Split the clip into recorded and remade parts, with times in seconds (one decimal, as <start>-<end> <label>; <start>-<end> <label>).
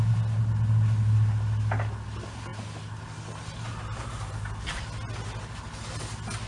0.0-6.5 recorded